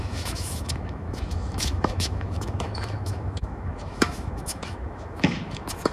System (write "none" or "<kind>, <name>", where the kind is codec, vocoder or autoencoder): autoencoder, DAC-VAE